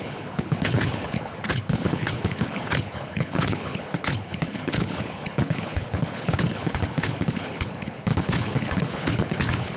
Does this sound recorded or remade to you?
remade